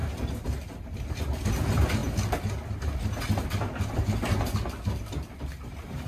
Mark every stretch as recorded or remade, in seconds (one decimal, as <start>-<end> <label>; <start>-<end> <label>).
0.0-6.1 recorded